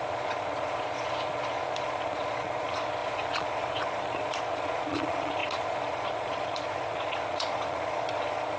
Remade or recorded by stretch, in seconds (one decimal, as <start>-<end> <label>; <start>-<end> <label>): 0.0-8.6 remade

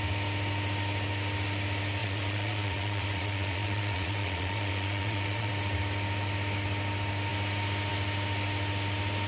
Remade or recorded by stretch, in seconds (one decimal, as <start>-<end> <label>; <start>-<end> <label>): 0.0-2.0 recorded; 2.0-5.5 remade; 5.5-9.3 recorded

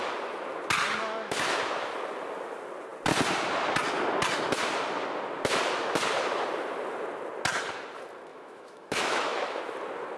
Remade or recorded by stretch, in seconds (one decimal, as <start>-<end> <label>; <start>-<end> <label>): 0.0-1.0 recorded; 1.0-1.6 remade; 1.6-8.3 recorded; 8.3-9.6 remade; 9.6-10.2 recorded

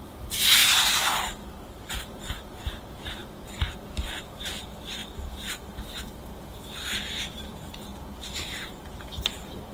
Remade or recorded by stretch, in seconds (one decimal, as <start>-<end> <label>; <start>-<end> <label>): 0.0-0.6 remade; 0.6-2.0 recorded; 2.0-9.7 remade

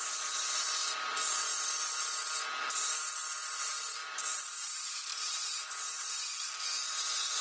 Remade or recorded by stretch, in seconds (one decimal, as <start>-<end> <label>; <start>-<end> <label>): 0.0-1.5 remade; 1.5-2.6 recorded; 2.6-7.4 remade

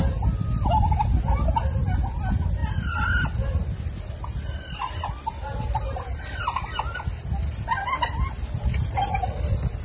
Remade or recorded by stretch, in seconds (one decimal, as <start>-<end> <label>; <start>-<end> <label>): 0.0-9.8 recorded

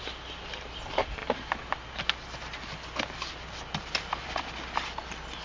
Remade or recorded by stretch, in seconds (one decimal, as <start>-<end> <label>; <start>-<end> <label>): 0.0-5.4 recorded

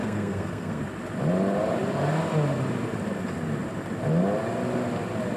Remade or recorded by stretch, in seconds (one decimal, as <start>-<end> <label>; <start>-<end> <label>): 0.0-0.8 remade; 0.8-5.4 recorded